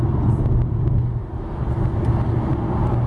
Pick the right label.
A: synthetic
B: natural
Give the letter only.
B